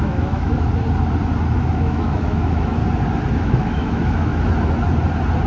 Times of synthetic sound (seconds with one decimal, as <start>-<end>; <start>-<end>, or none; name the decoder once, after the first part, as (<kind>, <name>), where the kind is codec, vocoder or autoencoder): 0.0-0.7 (autoencoder, DAC-VAE); 1.7-2.8; 3.3-4.3